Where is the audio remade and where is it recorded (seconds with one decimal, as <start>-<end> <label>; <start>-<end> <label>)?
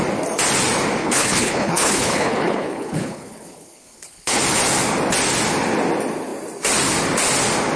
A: 0.0-1.0 recorded; 1.0-4.4 remade; 4.4-7.8 recorded